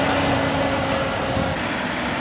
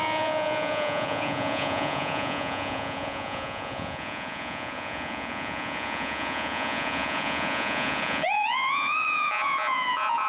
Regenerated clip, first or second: second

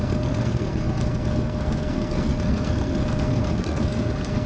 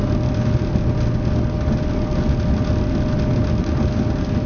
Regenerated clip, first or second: first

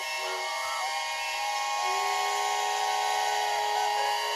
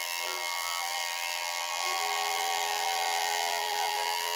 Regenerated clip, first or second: second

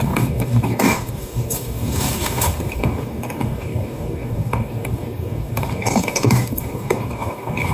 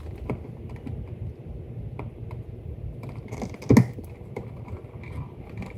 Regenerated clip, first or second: first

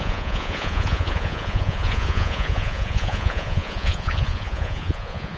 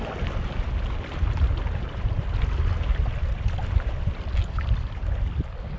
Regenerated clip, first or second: first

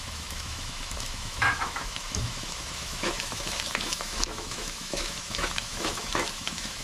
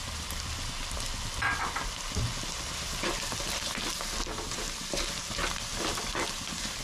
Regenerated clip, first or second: first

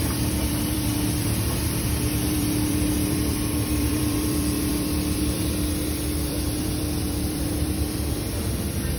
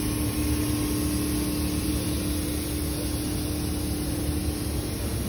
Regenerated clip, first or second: first